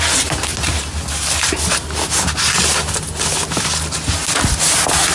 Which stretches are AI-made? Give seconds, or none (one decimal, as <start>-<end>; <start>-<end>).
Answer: none